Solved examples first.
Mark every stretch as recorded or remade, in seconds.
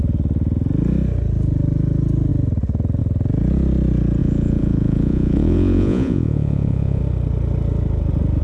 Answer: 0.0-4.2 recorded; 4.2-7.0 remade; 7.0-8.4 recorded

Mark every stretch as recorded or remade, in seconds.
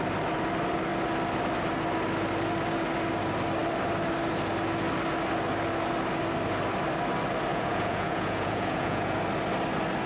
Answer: 0.0-7.5 recorded; 7.5-9.2 remade; 9.2-10.1 recorded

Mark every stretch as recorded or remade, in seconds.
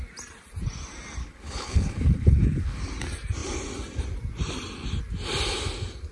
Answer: 0.0-1.2 recorded; 1.2-2.8 remade; 2.8-6.1 recorded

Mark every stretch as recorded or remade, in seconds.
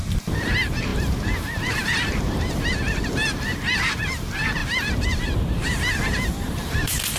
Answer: 0.0-7.2 remade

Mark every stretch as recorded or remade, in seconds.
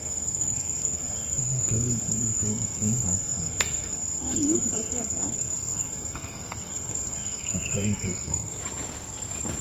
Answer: 0.0-8.6 remade; 8.6-9.6 recorded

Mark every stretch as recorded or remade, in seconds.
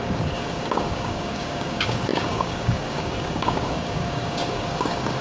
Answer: 0.0-5.2 remade